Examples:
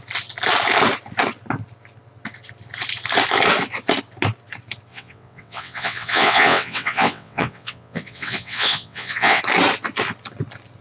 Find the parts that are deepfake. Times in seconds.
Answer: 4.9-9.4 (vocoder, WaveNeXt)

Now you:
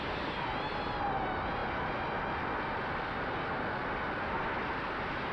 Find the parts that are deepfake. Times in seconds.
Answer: none

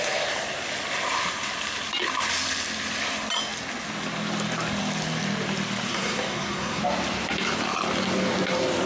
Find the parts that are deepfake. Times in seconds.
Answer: 5.9-6.8 (codec, SNAC)

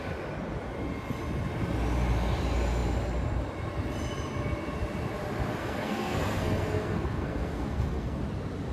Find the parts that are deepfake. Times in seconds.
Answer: 5.6-8.2 (codec, SNAC)

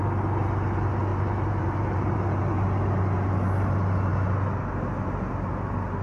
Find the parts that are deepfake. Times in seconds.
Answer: 1.1-2.2 (vocoder, BigVGAN v2)

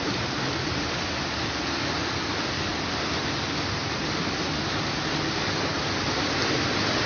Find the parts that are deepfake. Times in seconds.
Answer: none

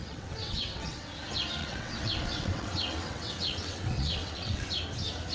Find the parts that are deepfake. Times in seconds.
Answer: 0.0-1.1 (vocoder, WaveNeXt); 1.6-4.7